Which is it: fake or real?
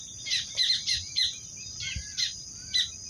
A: fake